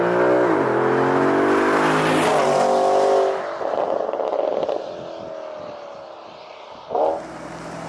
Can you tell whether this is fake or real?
real